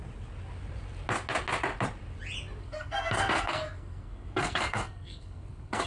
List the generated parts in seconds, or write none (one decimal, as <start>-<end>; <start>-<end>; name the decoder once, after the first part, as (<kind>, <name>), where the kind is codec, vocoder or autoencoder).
2.6-5.9 (codec, SNAC)